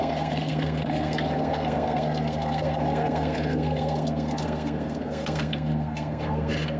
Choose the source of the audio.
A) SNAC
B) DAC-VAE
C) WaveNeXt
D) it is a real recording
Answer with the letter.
A